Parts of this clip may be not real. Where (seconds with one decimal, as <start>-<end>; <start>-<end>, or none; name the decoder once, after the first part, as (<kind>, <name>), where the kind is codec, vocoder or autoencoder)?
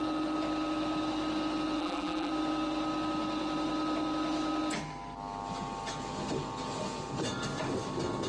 1.8-2.3 (vocoder, BigVGAN v2)